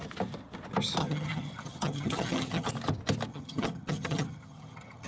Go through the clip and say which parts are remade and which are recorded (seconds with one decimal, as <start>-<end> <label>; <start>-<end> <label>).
0.0-1.0 recorded; 1.0-2.7 remade; 2.7-3.3 recorded; 3.3-5.1 remade